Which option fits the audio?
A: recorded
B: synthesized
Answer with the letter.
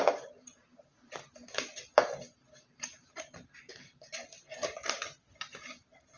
B